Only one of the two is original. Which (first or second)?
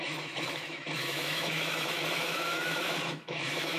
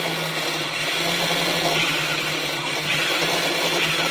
second